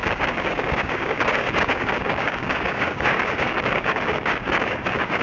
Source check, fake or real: fake